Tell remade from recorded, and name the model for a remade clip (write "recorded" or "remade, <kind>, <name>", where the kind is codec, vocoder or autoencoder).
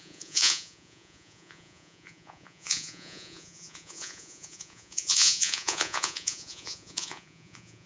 remade, vocoder, Vocos